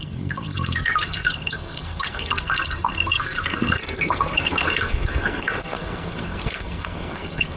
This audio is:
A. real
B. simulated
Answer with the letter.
B